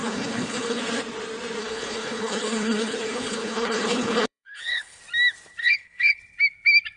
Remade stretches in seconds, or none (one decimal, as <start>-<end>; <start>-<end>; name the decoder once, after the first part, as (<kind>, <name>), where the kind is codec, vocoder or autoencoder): 0.0-0.8 (codec, HILCodec); 1.6-5.0; 5.6-6.2

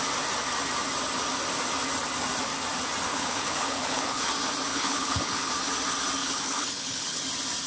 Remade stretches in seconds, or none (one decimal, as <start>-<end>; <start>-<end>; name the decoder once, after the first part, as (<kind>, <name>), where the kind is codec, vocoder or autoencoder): 3.1-4.3 (codec, HILCodec); 4.7-5.5; 6.2-7.2

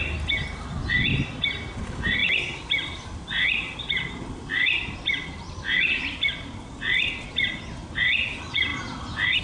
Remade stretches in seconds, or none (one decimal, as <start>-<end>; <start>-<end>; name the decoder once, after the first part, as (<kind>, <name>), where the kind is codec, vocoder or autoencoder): none

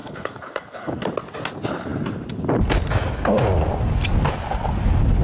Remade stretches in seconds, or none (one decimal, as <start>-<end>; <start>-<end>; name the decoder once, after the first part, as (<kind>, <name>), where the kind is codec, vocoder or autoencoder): 0.0-0.9 (codec, HILCodec)

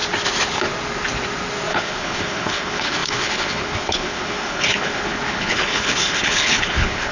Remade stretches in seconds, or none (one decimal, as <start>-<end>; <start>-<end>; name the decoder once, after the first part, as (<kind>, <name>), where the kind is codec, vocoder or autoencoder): 1.7-7.1 (codec, HILCodec)

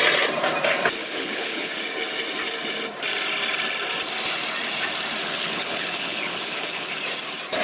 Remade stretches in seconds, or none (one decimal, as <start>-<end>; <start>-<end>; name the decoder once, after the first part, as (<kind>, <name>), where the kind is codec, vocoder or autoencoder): 1.0-1.7 (codec, HILCodec); 5.2-6.9